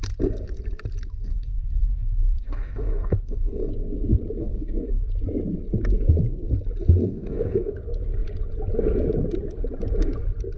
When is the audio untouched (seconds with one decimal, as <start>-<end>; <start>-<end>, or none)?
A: 0.0-1.2; 3.7-4.4; 5.0-7.0; 7.7-10.6